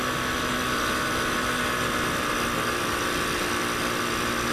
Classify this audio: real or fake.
real